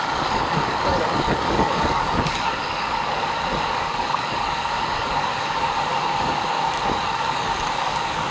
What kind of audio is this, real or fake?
fake